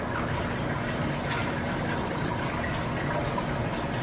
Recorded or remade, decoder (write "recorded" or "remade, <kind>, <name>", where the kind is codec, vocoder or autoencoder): recorded